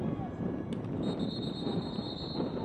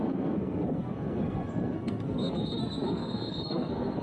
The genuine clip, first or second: first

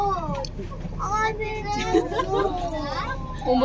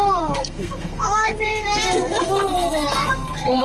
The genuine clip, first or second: first